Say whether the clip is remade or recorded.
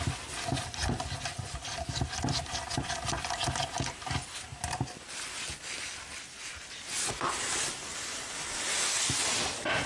recorded